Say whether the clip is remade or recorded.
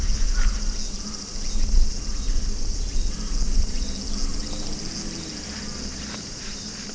recorded